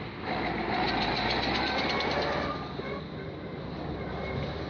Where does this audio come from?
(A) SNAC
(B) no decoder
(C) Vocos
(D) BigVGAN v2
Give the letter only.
B